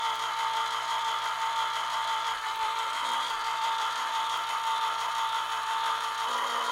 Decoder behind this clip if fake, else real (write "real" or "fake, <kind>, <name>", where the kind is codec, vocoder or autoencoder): fake, vocoder, BigVGAN v2